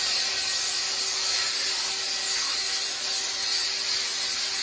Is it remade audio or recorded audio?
recorded